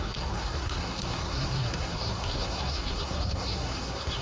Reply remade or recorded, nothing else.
remade